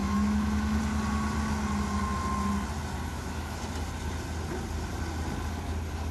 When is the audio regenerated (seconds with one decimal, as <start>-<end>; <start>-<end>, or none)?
0.0-0.8; 3.1-3.6